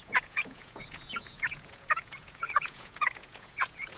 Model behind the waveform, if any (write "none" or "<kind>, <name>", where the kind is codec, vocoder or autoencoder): vocoder, Vocos